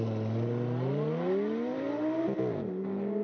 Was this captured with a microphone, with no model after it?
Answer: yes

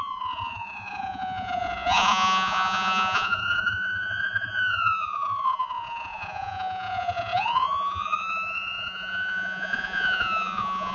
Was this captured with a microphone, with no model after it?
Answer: no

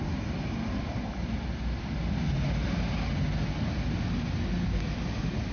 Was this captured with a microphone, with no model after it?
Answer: yes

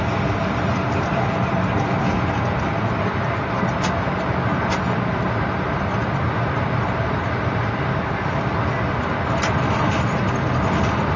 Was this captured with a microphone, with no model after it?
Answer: yes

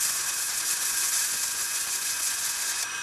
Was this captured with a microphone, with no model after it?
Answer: no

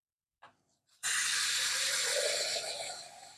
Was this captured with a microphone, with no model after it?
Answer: yes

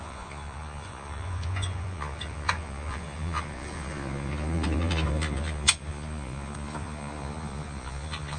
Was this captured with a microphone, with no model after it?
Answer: no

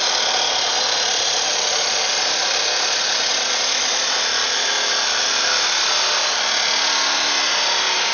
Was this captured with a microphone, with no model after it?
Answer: yes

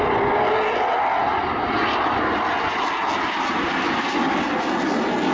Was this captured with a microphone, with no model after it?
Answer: yes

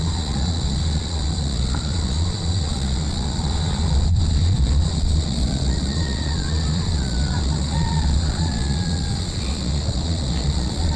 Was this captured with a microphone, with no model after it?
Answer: no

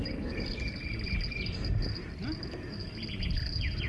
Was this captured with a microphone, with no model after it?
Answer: yes